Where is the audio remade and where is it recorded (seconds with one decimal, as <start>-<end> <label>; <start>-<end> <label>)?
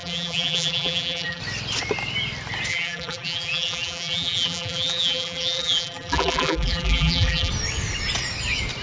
0.0-1.4 remade; 1.4-2.7 recorded; 2.7-7.5 remade; 7.5-8.8 recorded